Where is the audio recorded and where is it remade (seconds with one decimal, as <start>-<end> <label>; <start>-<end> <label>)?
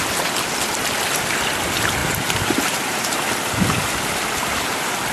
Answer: 0.0-2.0 recorded; 2.0-3.4 remade; 3.4-5.1 recorded